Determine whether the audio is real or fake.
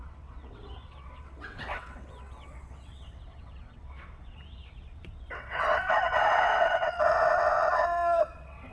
fake